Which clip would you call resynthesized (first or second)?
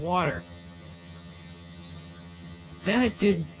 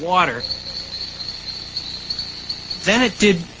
first